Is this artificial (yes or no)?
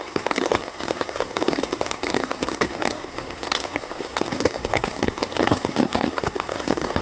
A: yes